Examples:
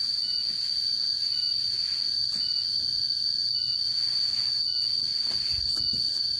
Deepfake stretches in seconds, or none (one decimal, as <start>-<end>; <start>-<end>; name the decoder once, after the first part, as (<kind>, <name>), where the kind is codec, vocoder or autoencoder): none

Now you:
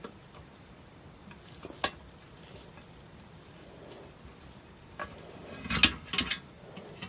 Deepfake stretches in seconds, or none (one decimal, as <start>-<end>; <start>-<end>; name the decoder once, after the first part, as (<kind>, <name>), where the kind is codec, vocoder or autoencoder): none

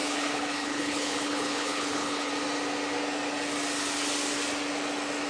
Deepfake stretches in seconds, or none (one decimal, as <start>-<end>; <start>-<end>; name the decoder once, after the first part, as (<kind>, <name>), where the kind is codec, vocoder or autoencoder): 0.0-2.3 (codec, HILCodec)

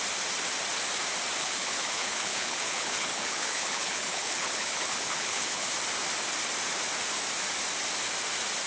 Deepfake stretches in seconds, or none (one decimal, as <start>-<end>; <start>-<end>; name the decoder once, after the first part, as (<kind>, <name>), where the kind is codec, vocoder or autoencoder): 1.4-5.7 (codec, HILCodec)

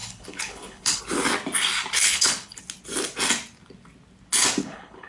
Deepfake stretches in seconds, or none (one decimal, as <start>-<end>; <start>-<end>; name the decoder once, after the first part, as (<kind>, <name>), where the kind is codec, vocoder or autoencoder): 0.0-1.0 (codec, HILCodec); 2.0-2.6; 4.6-5.1

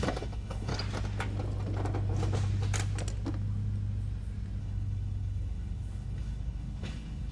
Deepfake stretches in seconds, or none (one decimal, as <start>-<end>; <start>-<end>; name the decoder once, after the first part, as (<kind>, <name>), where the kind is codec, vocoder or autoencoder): 0.0-0.7 (codec, HILCodec); 4.6-7.3

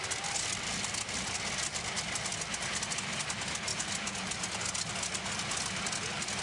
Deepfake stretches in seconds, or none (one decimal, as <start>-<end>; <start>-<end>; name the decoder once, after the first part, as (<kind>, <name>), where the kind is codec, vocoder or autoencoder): none

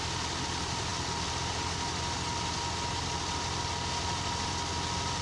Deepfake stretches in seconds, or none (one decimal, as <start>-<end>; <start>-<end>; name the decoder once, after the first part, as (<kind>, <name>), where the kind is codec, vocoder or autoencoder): none